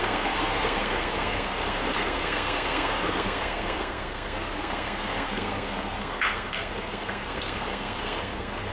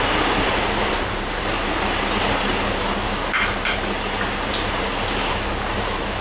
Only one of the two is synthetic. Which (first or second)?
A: first